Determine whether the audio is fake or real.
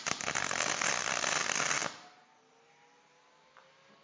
real